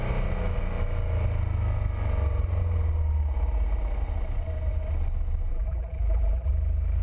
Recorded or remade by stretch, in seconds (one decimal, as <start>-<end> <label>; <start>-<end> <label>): 0.0-5.5 recorded; 5.5-6.5 remade; 6.5-7.0 recorded

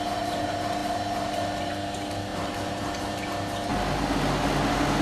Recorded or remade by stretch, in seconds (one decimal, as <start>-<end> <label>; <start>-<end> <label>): 0.0-2.3 recorded; 2.3-3.2 remade; 3.2-5.0 recorded

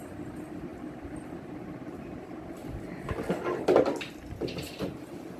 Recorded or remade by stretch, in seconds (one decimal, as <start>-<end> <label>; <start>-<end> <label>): 0.0-2.6 recorded; 2.6-3.5 remade; 3.5-5.4 recorded

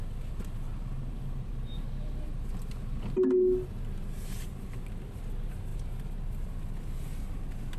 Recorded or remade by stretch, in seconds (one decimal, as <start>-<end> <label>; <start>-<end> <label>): 0.0-0.7 recorded; 0.7-2.5 remade; 2.5-7.8 recorded

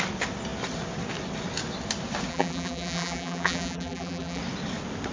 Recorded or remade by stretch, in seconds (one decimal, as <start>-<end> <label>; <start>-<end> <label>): 0.0-2.3 recorded; 2.3-4.4 remade; 4.4-5.1 recorded

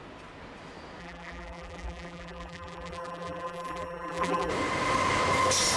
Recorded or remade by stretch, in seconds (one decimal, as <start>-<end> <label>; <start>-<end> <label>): 0.0-1.0 recorded; 1.0-4.5 remade; 4.5-5.8 recorded